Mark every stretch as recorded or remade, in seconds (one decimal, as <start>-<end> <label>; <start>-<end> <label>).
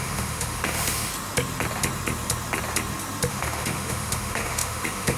0.0-1.1 remade; 1.1-3.3 recorded; 3.3-5.2 remade